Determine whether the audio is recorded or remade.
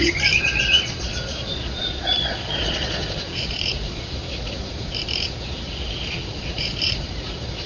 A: remade